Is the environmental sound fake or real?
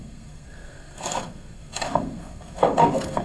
fake